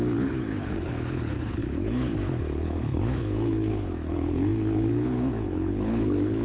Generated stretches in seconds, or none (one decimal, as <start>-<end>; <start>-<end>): 0.0-6.4